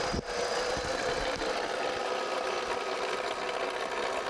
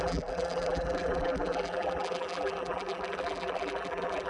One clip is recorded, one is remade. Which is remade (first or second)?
second